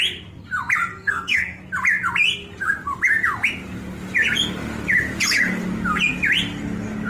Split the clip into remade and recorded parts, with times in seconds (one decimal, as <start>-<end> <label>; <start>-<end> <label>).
0.0-0.9 recorded; 0.9-1.6 remade; 1.6-7.1 recorded